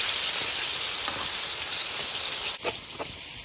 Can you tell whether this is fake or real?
real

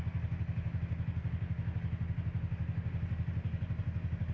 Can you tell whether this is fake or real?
real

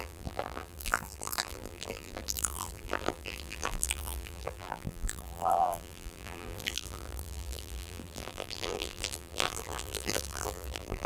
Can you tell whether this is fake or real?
fake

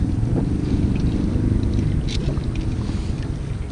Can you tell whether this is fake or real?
real